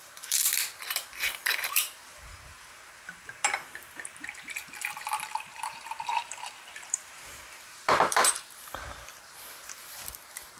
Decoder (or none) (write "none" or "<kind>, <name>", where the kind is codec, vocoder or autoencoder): vocoder, BigVGAN v2